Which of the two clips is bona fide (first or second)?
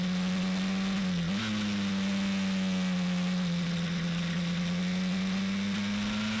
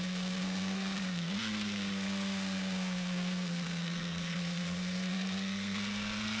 first